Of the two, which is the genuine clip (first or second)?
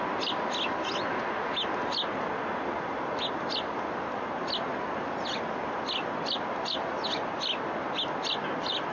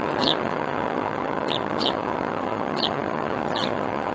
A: first